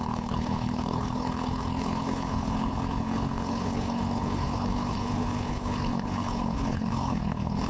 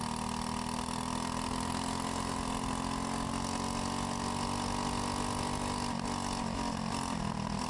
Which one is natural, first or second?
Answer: second